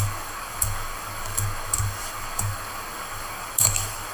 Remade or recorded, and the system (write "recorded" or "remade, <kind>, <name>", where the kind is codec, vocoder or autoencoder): remade, codec, DAC